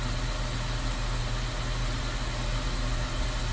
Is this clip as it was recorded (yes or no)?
yes